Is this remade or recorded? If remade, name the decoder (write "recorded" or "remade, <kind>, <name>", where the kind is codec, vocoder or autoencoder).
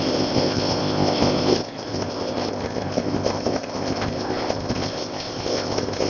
remade, codec, ZipCodec